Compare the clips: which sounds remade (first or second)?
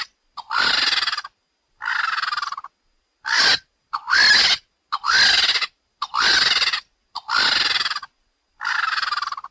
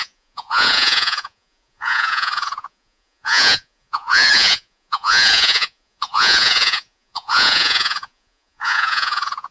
second